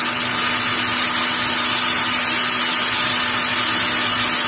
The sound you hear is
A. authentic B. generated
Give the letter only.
A